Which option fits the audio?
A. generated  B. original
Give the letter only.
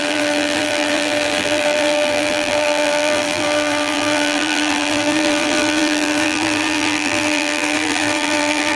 A